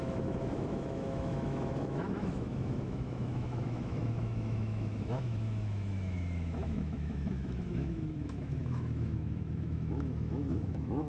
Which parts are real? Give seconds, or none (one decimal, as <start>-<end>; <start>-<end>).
none